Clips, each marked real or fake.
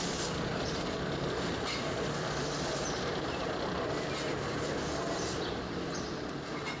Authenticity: real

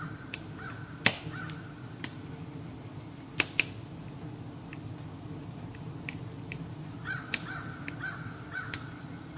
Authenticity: real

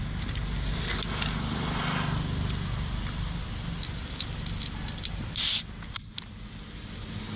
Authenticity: real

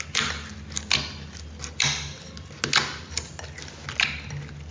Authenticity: real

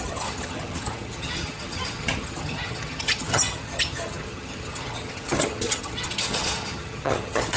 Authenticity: fake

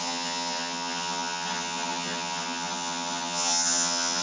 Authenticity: fake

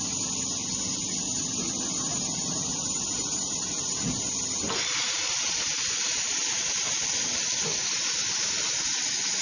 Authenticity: real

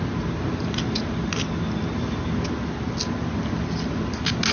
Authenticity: real